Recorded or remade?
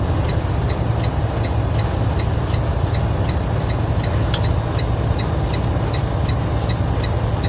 recorded